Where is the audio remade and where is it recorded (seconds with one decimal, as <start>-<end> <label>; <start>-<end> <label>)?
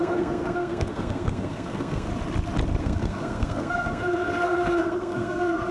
0.0-2.1 remade; 2.1-2.8 recorded; 2.8-5.7 remade